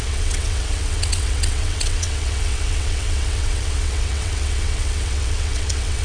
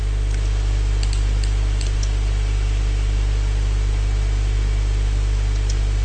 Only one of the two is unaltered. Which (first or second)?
second